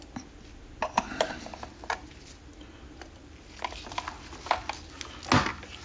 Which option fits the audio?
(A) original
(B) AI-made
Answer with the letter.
A